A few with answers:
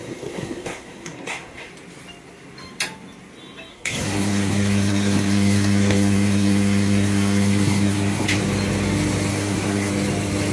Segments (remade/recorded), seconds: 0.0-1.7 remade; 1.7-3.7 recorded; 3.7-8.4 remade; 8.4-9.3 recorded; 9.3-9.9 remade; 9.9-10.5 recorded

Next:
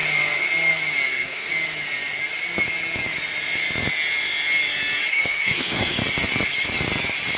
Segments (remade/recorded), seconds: 0.0-1.1 recorded; 1.1-1.5 remade; 1.5-5.1 recorded; 5.1-6.0 remade; 6.0-7.4 recorded

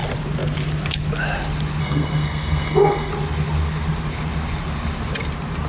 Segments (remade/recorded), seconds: 0.0-1.8 recorded; 1.8-3.1 remade; 3.1-5.7 recorded